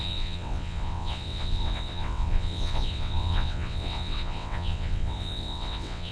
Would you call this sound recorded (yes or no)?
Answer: no